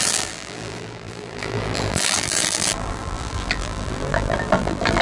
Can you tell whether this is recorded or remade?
remade